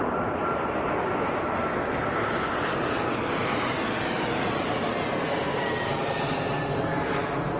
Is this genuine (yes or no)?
yes